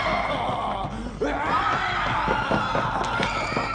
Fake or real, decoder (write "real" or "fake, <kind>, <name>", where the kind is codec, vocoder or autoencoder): real